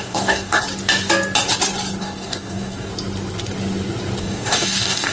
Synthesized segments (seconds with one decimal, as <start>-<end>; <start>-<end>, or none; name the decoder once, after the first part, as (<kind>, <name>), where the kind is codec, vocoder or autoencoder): 0.0-0.6 (codec, DAC); 2.0-2.9; 4.2-5.1